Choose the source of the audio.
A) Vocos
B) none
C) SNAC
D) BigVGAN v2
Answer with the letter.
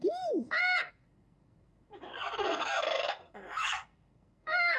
C